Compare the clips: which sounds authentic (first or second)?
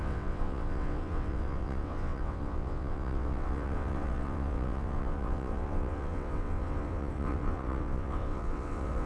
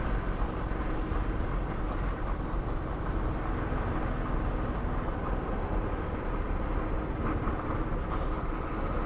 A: second